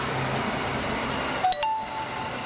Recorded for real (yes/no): yes